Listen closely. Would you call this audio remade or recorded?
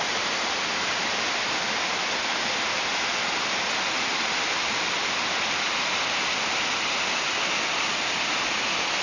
recorded